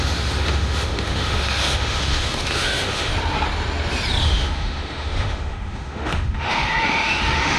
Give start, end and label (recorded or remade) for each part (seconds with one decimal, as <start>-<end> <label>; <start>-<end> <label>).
0.0-3.1 remade; 3.1-4.2 recorded; 4.2-7.6 remade